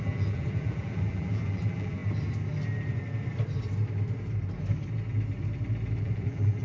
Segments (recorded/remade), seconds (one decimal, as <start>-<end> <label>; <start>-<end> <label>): 0.0-2.0 remade; 2.0-6.0 recorded; 6.0-6.6 remade